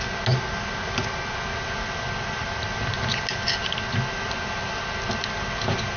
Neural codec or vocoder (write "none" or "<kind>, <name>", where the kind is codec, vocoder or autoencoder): none